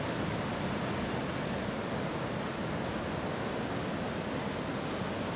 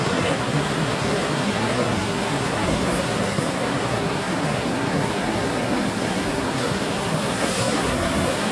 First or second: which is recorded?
first